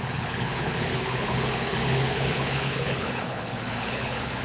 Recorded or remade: remade